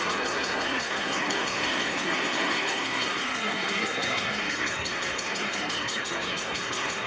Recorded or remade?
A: remade